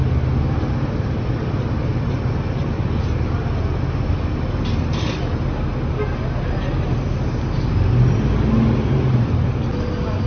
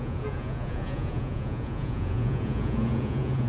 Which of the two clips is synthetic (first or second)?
second